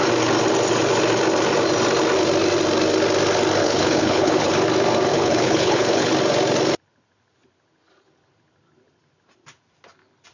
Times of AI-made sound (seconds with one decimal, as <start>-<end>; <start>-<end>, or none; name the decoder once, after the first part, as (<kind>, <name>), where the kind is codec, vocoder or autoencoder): 3.6-4.5 (codec, HILCodec); 5.1-6.1